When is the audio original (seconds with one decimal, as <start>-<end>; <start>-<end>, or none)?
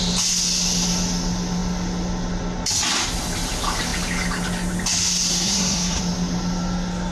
0.0-5.3; 6.0-7.1